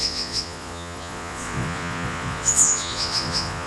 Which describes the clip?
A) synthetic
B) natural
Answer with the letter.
A